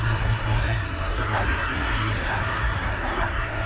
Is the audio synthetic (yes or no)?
yes